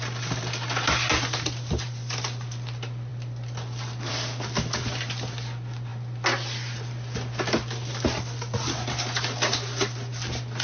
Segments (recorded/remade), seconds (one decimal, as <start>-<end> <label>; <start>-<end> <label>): 0.0-10.6 recorded

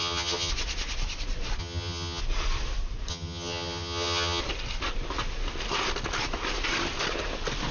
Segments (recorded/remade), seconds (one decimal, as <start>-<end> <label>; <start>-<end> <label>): 0.0-0.5 remade; 0.5-1.6 recorded; 1.6-2.2 remade; 2.2-3.1 recorded; 3.1-4.4 remade; 4.4-7.7 recorded

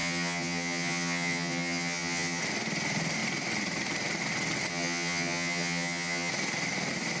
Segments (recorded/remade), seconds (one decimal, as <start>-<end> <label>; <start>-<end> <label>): 0.0-2.4 remade; 2.4-4.7 recorded; 4.7-6.3 remade; 6.3-7.2 recorded

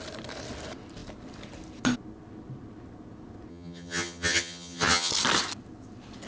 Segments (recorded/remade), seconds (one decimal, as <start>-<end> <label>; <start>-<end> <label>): 0.0-3.5 recorded; 3.5-5.1 remade; 5.1-6.3 recorded

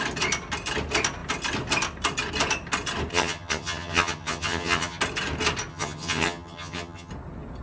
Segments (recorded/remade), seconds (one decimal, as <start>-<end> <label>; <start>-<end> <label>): 0.0-3.1 recorded; 3.1-5.0 remade; 5.0-5.7 recorded; 5.7-7.1 remade; 7.1-7.6 recorded